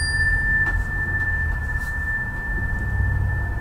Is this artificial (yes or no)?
no